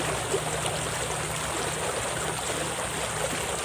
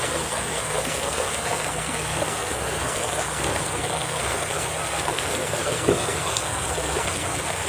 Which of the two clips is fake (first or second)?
second